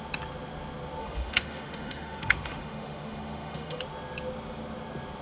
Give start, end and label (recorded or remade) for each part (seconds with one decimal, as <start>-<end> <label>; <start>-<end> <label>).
0.0-1.0 recorded; 1.0-3.8 remade; 3.8-5.2 recorded